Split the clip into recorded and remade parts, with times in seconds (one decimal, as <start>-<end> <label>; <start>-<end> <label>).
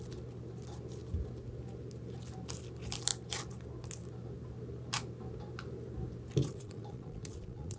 0.0-6.4 recorded; 6.4-7.8 remade